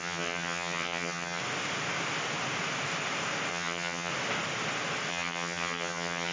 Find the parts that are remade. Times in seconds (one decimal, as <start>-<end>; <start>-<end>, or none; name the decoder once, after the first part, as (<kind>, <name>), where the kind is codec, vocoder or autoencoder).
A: 0.0-1.4 (vocoder, HiFi-GAN); 3.5-4.1; 5.1-6.3